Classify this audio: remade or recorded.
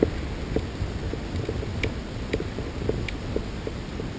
recorded